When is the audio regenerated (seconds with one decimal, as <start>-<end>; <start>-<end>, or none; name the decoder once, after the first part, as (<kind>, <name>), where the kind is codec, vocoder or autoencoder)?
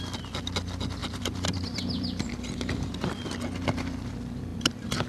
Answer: 1.0-4.1 (vocoder, BigVGAN v2); 4.5-5.1